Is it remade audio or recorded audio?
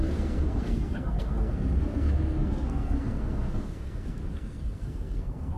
remade